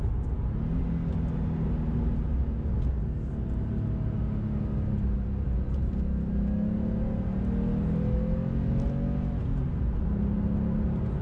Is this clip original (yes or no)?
yes